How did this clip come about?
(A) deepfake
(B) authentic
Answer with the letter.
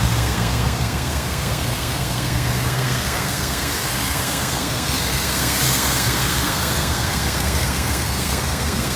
A